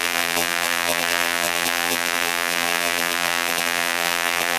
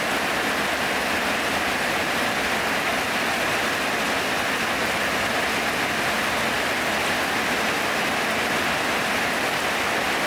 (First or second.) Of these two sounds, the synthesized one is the first